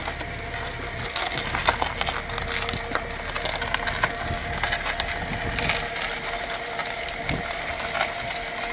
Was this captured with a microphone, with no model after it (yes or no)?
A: yes